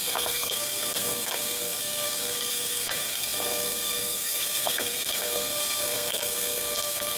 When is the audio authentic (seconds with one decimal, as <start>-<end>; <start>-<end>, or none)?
none